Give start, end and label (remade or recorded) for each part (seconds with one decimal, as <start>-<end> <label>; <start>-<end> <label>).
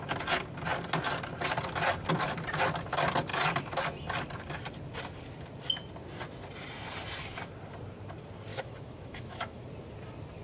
0.0-8.5 recorded; 8.5-9.6 remade; 9.6-10.4 recorded